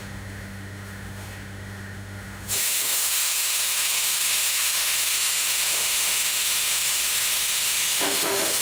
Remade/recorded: remade